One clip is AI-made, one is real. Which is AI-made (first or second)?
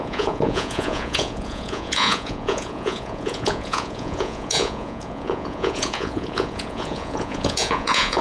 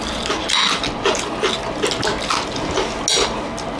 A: first